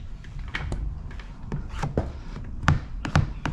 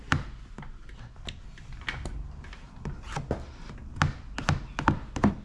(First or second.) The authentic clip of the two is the second